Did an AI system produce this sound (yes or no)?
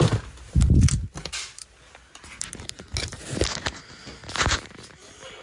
no